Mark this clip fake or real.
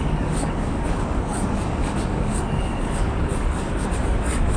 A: fake